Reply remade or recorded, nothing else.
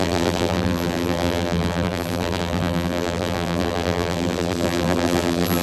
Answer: remade